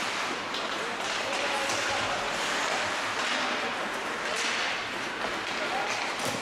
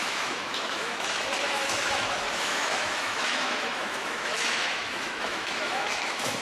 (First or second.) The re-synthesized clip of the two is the second